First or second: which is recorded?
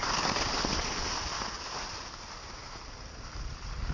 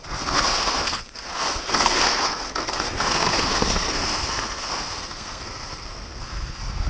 first